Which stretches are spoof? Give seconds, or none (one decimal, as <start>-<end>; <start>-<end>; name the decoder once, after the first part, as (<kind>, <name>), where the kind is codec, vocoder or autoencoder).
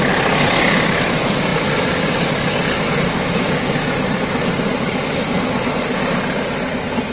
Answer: none